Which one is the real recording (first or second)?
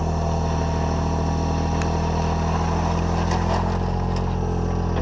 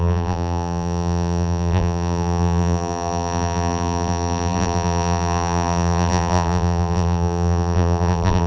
first